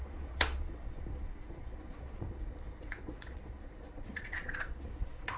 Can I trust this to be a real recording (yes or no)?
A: no